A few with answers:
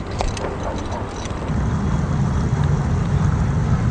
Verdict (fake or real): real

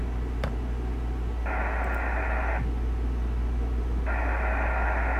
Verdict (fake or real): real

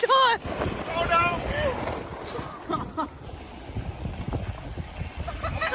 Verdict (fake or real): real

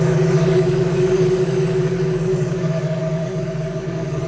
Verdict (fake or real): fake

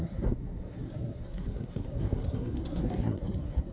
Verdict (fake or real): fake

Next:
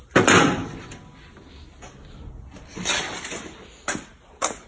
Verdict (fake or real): real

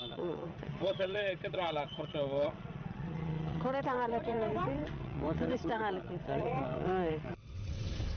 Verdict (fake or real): fake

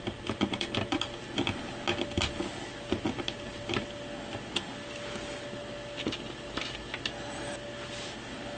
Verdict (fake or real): real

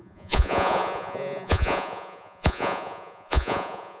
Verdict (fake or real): fake